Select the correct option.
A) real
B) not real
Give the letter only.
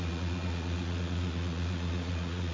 B